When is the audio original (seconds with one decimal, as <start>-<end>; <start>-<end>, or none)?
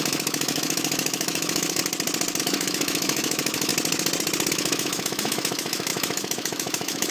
1.8-2.4; 3.7-4.5